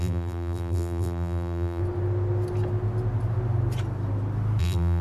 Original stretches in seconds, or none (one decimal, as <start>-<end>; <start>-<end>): 1.8-4.6